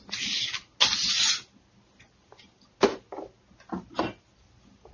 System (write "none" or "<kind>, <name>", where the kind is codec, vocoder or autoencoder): none